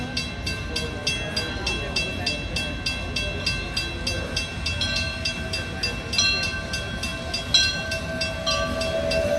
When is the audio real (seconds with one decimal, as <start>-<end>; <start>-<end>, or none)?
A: 0.0-9.4